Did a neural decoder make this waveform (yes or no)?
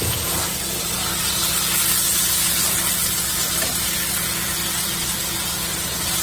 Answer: no